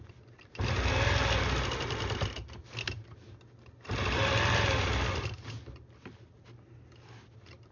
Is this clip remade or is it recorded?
recorded